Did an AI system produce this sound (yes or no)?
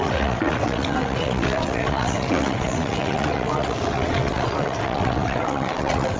yes